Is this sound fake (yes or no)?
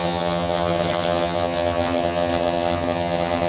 yes